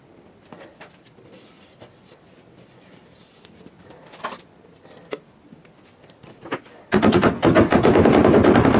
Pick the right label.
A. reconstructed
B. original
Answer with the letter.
A